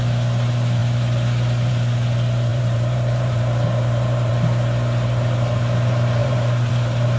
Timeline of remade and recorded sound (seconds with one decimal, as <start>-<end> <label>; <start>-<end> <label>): 0.0-2.5 recorded; 2.5-4.3 remade; 4.3-6.2 recorded; 6.2-6.7 remade; 6.7-7.2 recorded